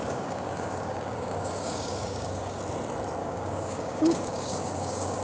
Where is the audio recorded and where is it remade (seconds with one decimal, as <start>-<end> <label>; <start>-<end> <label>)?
0.0-2.6 remade; 2.6-3.2 recorded; 3.2-5.2 remade